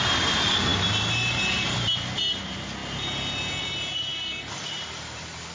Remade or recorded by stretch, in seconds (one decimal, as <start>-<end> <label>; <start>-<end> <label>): 0.0-0.7 remade; 0.7-1.3 recorded; 1.3-2.8 remade; 2.8-3.6 recorded; 3.6-4.1 remade; 4.1-4.7 recorded; 4.7-5.5 remade